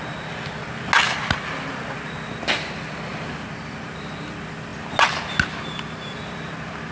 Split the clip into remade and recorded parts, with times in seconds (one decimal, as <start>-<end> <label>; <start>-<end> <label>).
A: 0.0-6.9 recorded